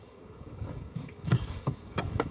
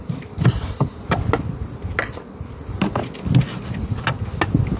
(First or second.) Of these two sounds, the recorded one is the second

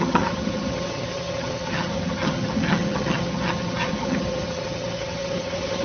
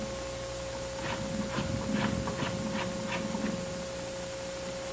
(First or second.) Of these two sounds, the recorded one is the second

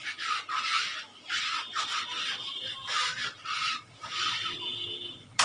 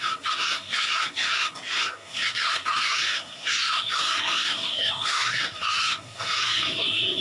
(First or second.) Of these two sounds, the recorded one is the first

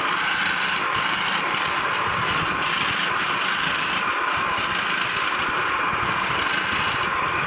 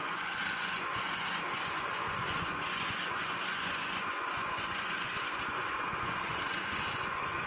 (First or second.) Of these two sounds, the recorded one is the first